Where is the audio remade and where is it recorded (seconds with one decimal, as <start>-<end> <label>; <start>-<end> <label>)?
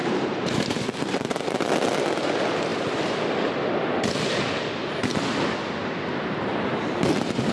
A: 0.0-1.7 remade; 1.7-7.5 recorded